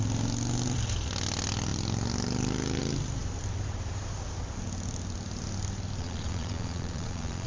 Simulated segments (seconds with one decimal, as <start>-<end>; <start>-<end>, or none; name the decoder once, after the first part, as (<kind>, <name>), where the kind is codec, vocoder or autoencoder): 6.0-7.5 (vocoder, Vocos)